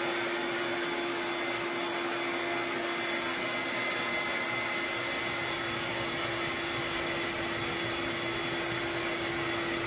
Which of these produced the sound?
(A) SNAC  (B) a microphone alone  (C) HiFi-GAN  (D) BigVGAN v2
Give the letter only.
B